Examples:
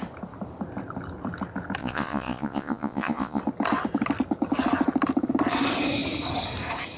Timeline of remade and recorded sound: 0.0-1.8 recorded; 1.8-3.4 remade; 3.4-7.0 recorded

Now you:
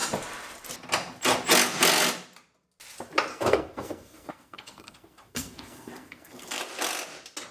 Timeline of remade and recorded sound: 0.0-3.3 recorded; 3.3-6.6 remade; 6.6-7.5 recorded

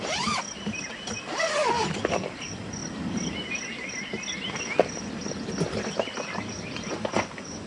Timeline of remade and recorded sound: 0.0-7.7 recorded

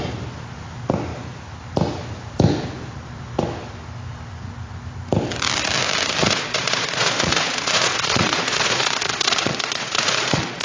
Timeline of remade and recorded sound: 0.0-6.2 recorded; 6.2-10.6 remade